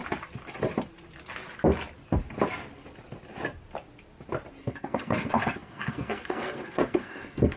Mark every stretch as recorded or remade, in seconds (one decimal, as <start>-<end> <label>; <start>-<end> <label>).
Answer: 0.0-4.6 recorded; 4.6-7.6 remade